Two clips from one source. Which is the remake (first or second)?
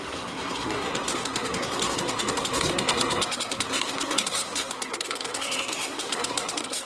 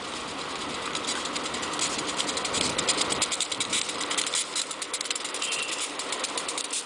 first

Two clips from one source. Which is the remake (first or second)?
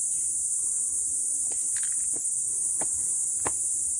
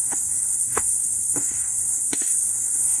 second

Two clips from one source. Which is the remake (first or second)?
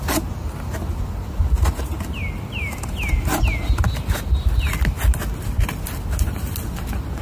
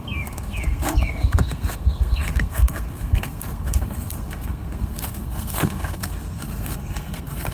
second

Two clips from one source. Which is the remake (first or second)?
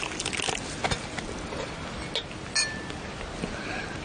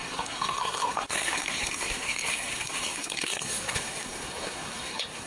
second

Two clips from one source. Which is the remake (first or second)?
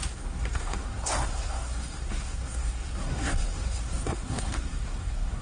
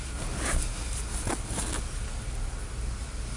first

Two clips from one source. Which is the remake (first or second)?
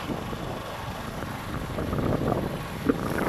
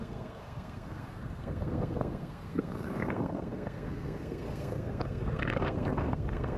second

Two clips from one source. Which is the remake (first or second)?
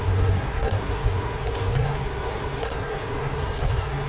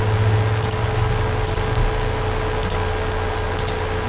first